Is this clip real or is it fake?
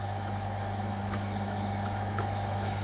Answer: fake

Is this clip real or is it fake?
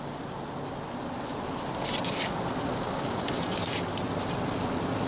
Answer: real